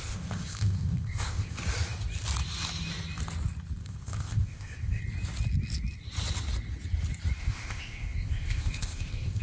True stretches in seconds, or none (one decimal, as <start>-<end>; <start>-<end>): 1.6-3.8; 5.0-7.4

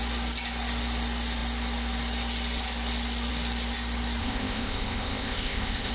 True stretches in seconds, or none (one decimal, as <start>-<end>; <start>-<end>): 0.0-4.2

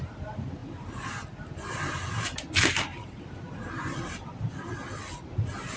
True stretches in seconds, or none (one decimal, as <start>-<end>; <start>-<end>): 0.0-5.8

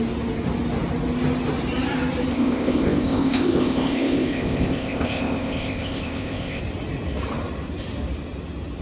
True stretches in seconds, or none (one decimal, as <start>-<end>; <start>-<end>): 0.0-2.3; 6.6-8.8

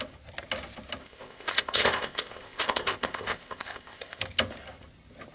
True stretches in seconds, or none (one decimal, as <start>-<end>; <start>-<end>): 0.0-1.0; 4.2-5.3